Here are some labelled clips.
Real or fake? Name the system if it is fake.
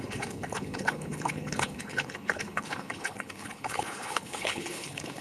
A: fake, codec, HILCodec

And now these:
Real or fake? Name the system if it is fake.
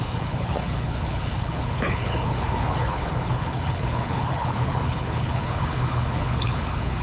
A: fake, codec, HILCodec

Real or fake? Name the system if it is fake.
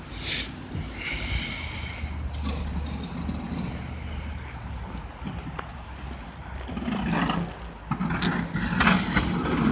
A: real